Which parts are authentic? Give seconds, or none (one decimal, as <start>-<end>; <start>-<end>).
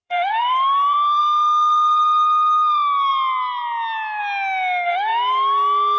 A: 1.2-6.0